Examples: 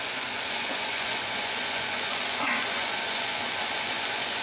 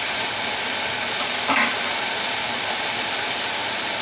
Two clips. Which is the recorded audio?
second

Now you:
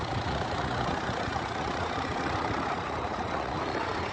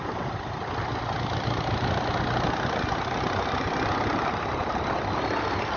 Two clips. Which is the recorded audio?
second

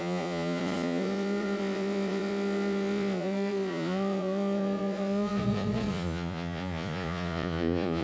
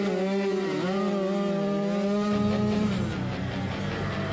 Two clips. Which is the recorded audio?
second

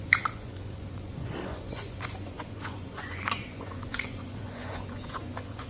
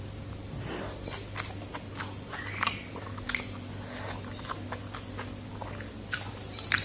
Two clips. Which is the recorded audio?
second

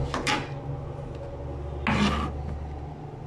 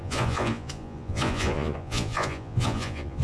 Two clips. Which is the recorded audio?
first